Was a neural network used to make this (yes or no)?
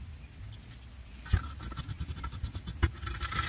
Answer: no